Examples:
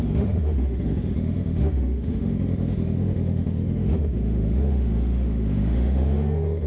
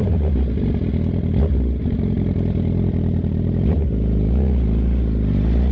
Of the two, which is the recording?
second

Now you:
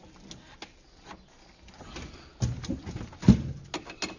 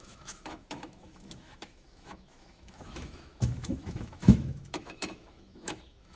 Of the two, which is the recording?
first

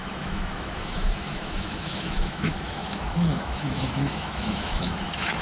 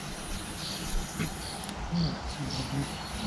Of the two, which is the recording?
second